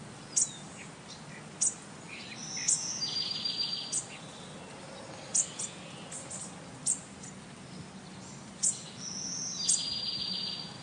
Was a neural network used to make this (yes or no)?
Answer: no